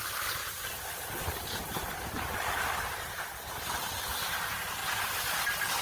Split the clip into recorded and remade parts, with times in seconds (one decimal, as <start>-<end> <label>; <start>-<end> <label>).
0.0-4.8 remade; 4.8-5.8 recorded